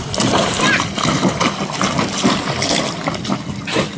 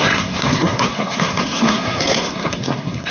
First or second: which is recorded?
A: first